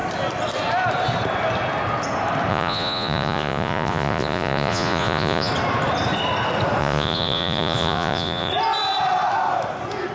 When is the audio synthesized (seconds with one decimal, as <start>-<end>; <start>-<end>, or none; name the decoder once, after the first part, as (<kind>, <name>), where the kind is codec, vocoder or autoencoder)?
2.5-5.5 (vocoder, Vocos); 6.8-8.5